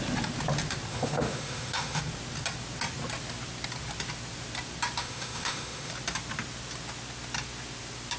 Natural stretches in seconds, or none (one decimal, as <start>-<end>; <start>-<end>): 0.0-0.9; 2.0-5.0; 5.9-8.2